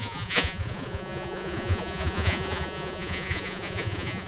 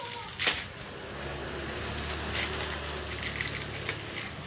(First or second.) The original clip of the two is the second